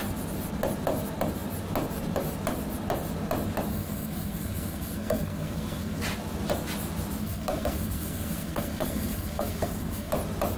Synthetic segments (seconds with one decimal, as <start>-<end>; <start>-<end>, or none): 3.7-6.0; 7.2-10.1